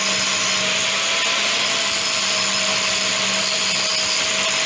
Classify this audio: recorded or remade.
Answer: recorded